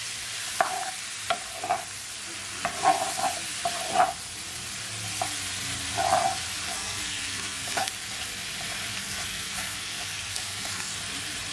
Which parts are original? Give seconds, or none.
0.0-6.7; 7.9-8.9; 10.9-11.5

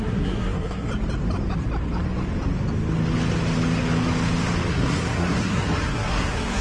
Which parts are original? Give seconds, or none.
0.9-4.7

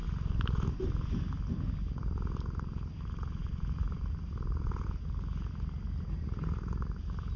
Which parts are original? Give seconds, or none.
0.0-7.4

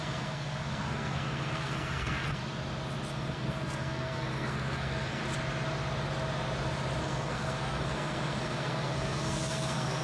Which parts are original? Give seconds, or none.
2.4-3.1; 5.2-7.0